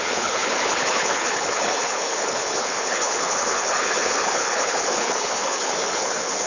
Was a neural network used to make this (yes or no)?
yes